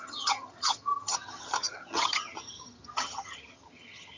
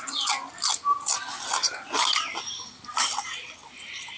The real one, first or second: second